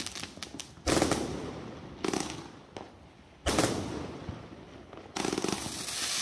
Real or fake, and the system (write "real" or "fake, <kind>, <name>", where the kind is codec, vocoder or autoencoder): real